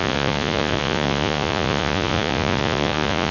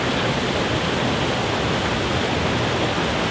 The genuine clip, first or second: second